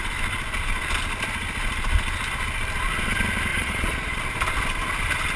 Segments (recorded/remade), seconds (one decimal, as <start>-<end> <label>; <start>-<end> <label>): 0.0-3.5 recorded; 3.5-4.2 remade; 4.2-5.4 recorded